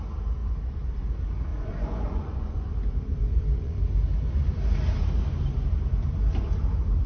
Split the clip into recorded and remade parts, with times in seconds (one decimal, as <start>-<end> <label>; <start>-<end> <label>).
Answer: 0.0-1.5 recorded; 1.5-2.7 remade; 2.7-3.1 recorded; 3.1-3.8 remade; 3.8-7.1 recorded